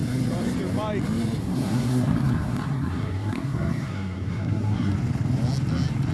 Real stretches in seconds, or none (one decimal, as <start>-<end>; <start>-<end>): 0.0-1.4; 4.9-6.1